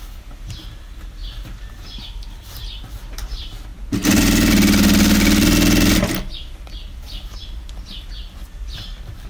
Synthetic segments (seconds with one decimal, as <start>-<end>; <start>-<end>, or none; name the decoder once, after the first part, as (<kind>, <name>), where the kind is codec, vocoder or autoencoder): 0.0-1.2 (vocoder, BigVGAN v2); 1.7-3.7; 6.7-9.3